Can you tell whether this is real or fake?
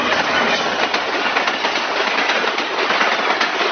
real